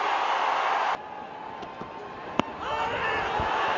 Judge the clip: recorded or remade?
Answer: recorded